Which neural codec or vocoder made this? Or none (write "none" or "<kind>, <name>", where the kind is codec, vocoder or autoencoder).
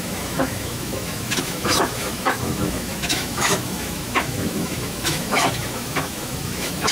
autoencoder, DAC-VAE